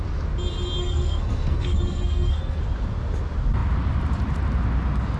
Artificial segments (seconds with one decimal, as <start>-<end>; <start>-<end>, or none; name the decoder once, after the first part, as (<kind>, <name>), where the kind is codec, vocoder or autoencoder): 0.8-2.6 (codec, SNAC)